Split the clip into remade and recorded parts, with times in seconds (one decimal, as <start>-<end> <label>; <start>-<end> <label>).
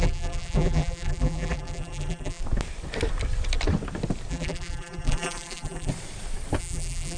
0.0-2.4 remade; 2.4-4.3 recorded; 4.3-5.9 remade; 5.9-6.6 recorded; 6.6-7.2 remade